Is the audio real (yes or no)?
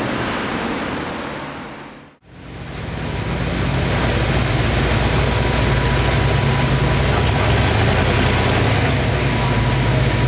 yes